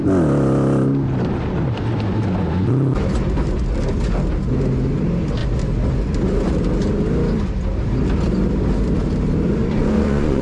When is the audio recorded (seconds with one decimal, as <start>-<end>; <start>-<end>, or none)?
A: 0.0-9.6